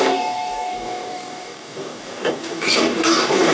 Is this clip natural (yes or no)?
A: no